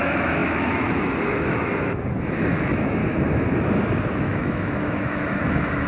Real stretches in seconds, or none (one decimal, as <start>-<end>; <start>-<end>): 1.7-2.2; 3.0-4.1